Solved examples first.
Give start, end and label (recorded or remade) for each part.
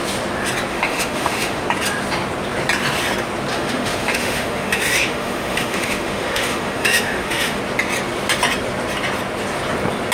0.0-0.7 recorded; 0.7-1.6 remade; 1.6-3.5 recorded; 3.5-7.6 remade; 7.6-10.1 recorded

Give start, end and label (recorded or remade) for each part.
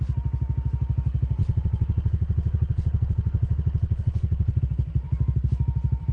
0.0-1.4 recorded; 1.4-4.6 remade; 4.6-6.1 recorded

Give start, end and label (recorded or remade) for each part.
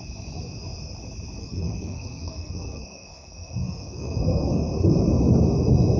0.0-1.4 recorded; 1.4-4.6 remade; 4.6-6.0 recorded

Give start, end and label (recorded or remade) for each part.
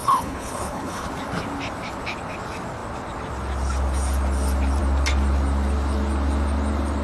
0.0-1.1 remade; 1.1-7.0 recorded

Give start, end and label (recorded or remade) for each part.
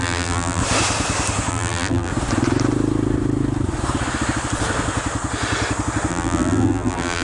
0.0-0.6 remade; 0.6-1.5 recorded; 1.5-2.1 remade; 2.1-6.1 recorded; 6.1-7.2 remade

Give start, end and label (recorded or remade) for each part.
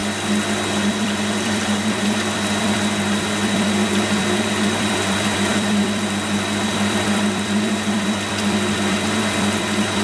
0.0-0.9 recorded; 0.9-10.0 remade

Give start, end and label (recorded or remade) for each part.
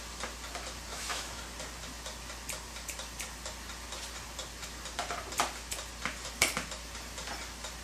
0.0-0.9 recorded; 0.9-1.4 remade; 1.4-7.8 recorded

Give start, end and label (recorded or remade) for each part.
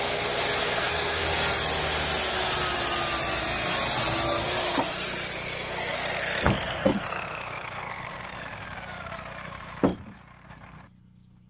0.0-0.6 recorded; 0.6-1.2 remade; 1.2-5.4 recorded; 5.4-8.1 remade; 8.1-11.5 recorded